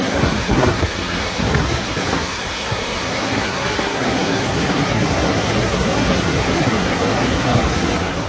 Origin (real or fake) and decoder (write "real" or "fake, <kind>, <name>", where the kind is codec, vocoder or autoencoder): fake, codec, SNAC